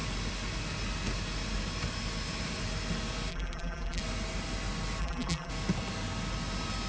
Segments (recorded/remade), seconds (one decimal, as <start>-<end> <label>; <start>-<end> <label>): 0.0-3.3 recorded; 3.3-4.0 remade; 4.0-5.0 recorded; 5.0-5.5 remade; 5.5-6.9 recorded